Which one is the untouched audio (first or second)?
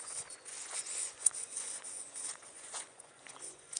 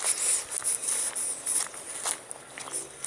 second